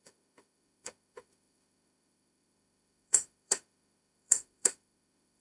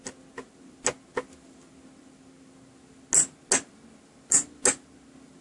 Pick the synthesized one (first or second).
first